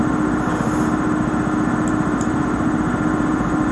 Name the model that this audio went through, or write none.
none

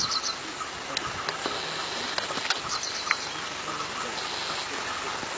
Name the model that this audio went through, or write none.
none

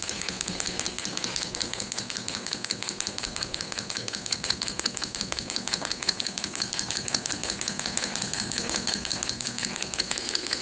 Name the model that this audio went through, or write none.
codec, SNAC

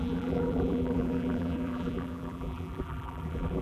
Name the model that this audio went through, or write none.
vocoder, BigVGAN v2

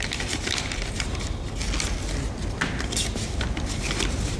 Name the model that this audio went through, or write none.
none